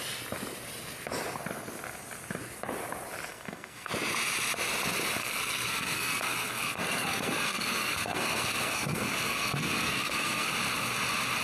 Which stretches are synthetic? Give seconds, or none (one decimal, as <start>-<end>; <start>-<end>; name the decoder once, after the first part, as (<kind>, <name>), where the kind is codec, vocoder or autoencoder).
3.3-3.9 (codec, SNAC); 5.2-10.5